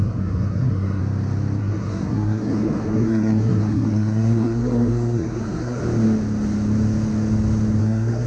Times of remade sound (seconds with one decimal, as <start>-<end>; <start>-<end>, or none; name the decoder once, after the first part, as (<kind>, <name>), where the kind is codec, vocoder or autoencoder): 0.0-1.0 (codec, SNAC); 1.6-5.8; 7.8-8.3